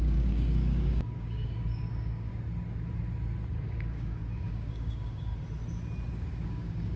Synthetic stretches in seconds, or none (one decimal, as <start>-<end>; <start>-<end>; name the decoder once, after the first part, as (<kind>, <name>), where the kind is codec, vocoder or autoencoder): 0.0-2.3 (codec, DAC); 3.5-5.3; 6.1-7.0